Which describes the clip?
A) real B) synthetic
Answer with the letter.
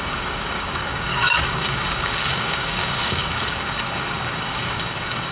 B